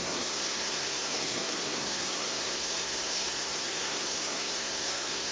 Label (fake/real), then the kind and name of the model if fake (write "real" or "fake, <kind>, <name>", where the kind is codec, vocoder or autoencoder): fake, codec, SNAC